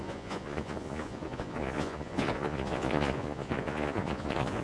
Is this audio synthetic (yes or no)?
yes